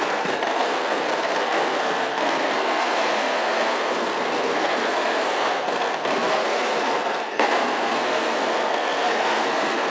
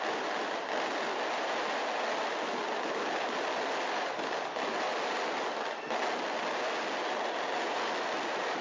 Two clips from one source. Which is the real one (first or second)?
second